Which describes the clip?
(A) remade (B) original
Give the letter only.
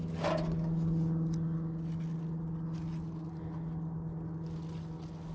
B